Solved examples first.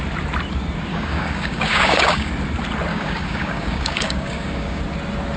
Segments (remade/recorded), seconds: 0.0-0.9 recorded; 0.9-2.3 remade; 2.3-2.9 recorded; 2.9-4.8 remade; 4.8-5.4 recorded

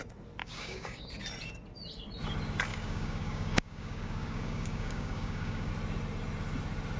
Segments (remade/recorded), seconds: 0.0-0.4 recorded; 0.4-1.1 remade; 1.1-2.7 recorded; 2.7-5.7 remade; 5.7-7.0 recorded

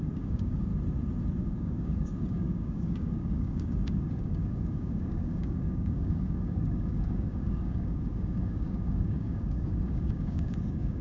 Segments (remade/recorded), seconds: 0.0-0.7 remade; 0.7-1.4 recorded; 1.4-11.0 remade

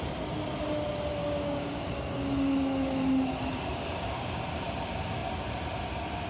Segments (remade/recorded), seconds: 0.0-1.2 recorded; 1.2-1.9 remade; 1.9-3.5 recorded; 3.5-4.4 remade; 4.4-6.3 recorded

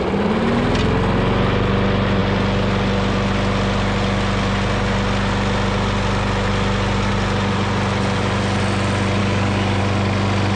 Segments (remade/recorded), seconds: 0.0-9.2 recorded; 9.2-9.8 remade; 9.8-10.6 recorded

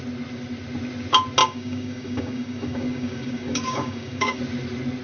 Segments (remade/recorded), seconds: 0.0-1.4 recorded; 1.4-4.4 remade; 4.4-5.0 recorded

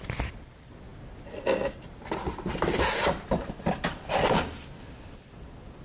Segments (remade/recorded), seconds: 0.0-5.8 recorded